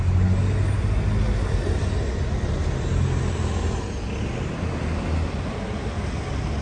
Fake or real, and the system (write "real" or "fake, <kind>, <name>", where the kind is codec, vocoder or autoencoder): real